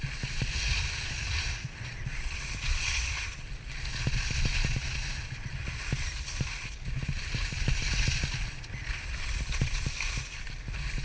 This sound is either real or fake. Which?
real